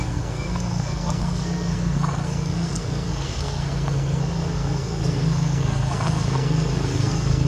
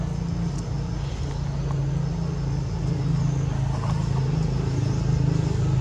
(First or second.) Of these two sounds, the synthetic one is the first